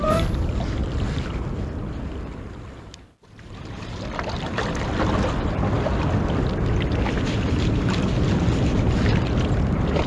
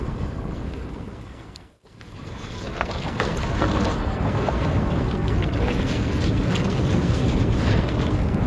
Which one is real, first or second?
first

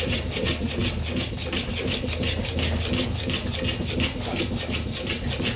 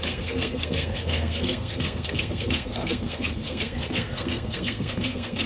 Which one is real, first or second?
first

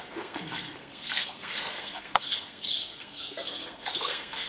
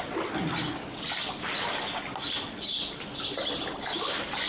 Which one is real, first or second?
second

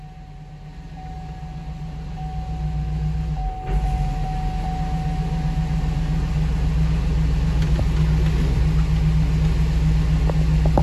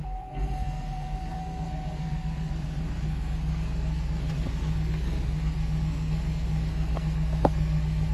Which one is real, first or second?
first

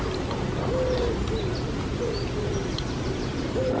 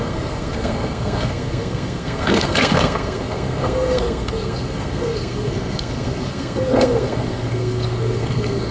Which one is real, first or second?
first